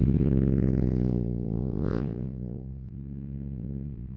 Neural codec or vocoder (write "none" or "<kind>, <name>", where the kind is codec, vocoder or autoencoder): vocoder, Vocos